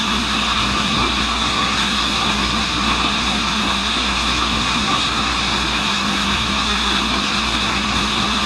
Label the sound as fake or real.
fake